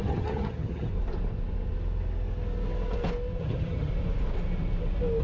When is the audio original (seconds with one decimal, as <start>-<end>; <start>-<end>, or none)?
0.9-3.4; 3.9-5.2